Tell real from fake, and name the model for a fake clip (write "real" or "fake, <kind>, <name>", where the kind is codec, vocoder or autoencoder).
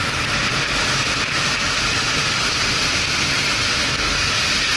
real